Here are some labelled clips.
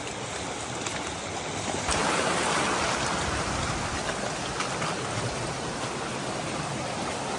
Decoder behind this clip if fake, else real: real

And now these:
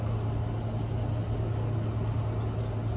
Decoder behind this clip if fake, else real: real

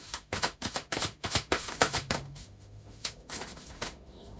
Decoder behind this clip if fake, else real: fake, autoencoder, DAC-VAE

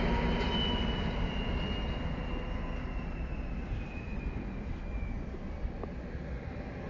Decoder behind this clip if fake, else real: real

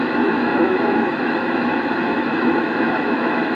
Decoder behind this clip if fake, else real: fake, autoencoder, DAC-VAE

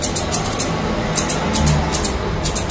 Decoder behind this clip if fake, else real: real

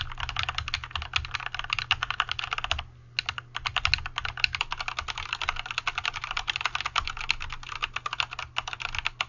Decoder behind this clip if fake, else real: real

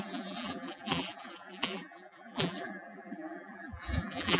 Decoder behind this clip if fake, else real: fake, vocoder, BigVGAN v2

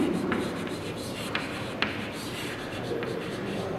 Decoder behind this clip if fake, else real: fake, vocoder, BigVGAN v2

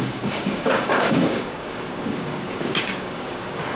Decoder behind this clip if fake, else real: fake, codec, DAC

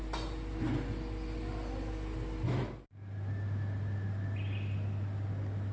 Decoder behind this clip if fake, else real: real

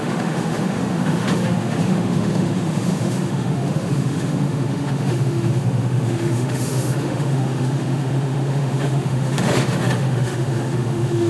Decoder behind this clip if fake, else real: fake, autoencoder, DAC-VAE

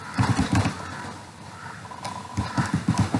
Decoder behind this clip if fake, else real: fake, vocoder, BigVGAN v2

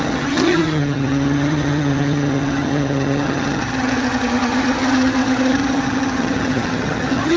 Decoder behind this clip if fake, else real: fake, vocoder, HiFi-GAN